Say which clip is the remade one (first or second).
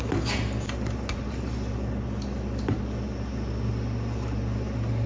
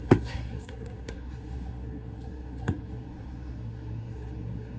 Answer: second